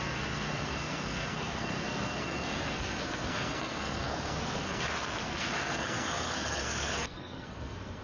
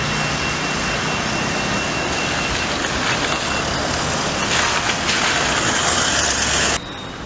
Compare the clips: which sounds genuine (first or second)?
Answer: second